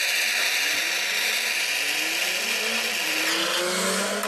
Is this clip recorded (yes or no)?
yes